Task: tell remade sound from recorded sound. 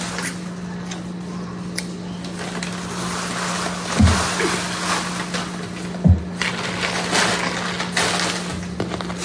recorded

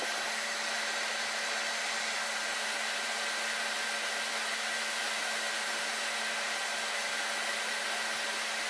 recorded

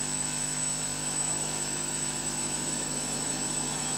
remade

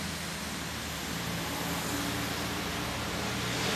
recorded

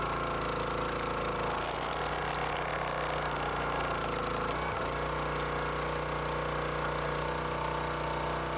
recorded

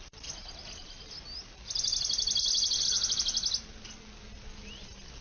recorded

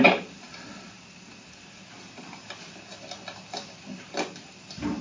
recorded